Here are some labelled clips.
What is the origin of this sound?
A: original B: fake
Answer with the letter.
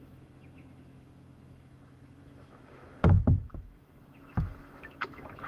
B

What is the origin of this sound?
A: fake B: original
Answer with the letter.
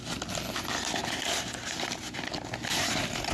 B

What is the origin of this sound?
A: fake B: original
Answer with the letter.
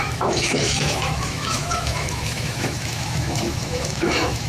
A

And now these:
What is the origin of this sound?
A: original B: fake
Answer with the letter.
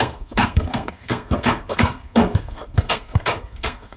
B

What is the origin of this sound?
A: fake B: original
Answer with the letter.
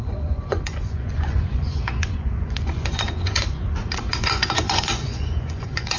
A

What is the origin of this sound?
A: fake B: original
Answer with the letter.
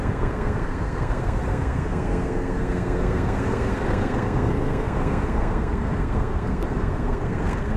A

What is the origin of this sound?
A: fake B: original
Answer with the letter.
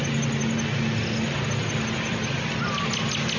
B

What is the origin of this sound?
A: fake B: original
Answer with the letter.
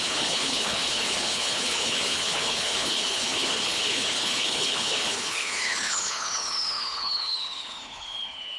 A